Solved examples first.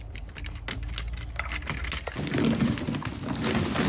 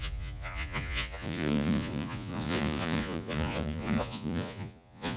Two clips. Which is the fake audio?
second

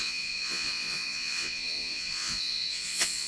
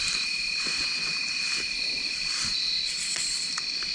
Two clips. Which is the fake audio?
first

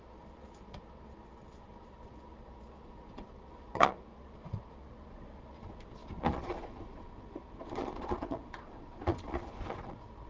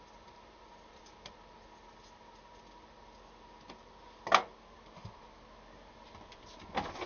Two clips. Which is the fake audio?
first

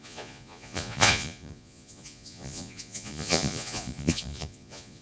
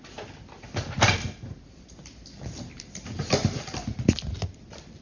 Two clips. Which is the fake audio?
first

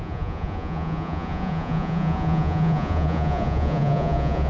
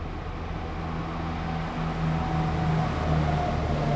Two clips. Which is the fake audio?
first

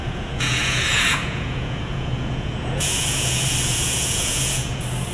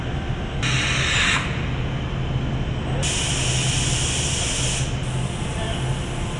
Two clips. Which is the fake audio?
first